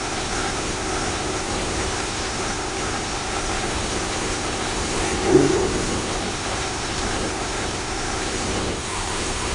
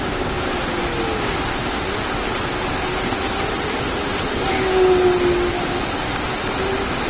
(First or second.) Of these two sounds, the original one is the second